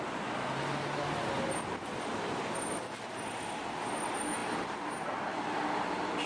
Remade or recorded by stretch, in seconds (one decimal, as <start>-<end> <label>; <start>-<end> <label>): 0.0-6.3 recorded